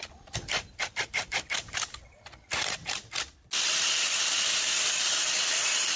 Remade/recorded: recorded